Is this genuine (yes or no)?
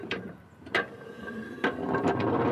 no